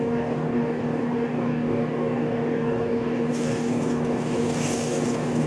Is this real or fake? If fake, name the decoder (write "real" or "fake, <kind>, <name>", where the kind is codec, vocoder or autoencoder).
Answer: fake, codec, DAC